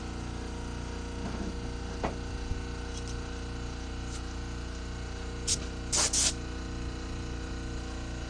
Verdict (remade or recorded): recorded